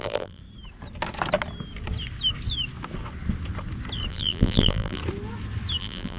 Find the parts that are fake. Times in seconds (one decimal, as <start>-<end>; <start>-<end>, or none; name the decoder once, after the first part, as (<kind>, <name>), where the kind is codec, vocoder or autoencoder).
0.0-0.4 (vocoder, BigVGAN v2); 4.1-5.0; 5.8-6.2